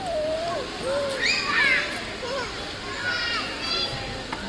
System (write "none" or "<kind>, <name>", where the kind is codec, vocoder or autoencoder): none